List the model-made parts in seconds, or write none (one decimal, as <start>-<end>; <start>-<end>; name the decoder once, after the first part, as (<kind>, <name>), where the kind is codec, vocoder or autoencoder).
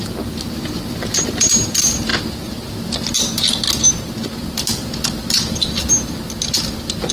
none